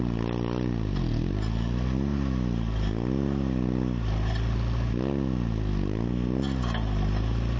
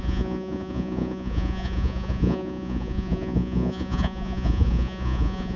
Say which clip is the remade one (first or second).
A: second